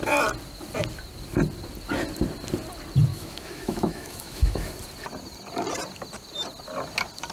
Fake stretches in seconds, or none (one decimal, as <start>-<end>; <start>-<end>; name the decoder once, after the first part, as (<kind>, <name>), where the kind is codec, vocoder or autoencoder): 3.1-4.7 (autoencoder, DAC-VAE)